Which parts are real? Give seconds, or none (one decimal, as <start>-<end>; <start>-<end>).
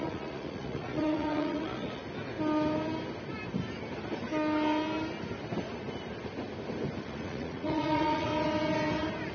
2.0-7.0; 8.3-9.3